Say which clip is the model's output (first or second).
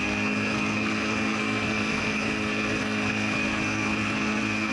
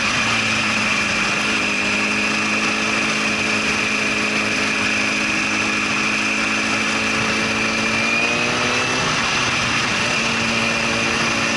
first